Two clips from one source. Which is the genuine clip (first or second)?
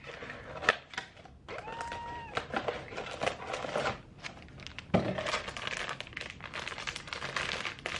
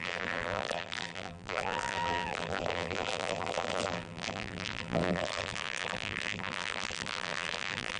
first